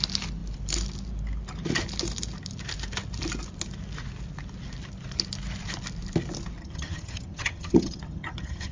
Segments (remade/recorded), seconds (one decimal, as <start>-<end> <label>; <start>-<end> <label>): 0.0-6.6 recorded; 6.6-8.7 remade